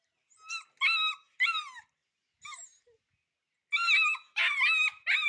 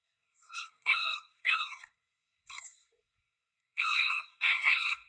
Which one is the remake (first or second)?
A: second